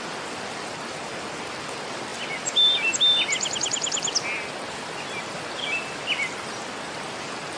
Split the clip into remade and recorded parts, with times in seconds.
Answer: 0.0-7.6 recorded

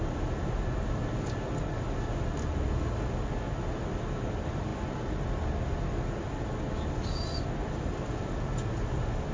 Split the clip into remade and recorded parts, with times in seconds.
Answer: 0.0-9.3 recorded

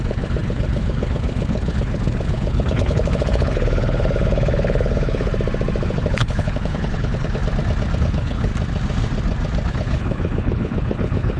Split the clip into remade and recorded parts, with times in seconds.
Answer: 0.0-5.3 remade; 5.3-5.8 recorded; 5.8-7.4 remade; 7.4-8.0 recorded; 8.0-8.5 remade; 8.5-9.7 recorded; 9.7-11.4 remade